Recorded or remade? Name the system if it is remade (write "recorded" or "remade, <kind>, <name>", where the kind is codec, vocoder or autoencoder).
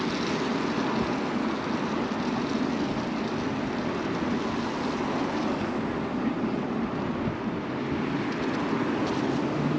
recorded